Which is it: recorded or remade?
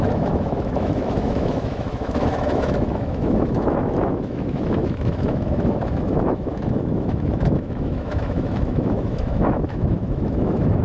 remade